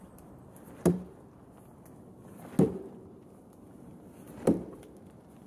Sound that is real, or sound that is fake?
real